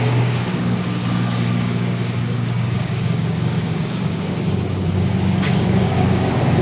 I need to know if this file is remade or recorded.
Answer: remade